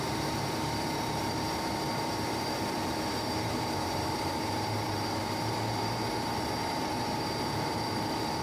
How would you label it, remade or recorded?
remade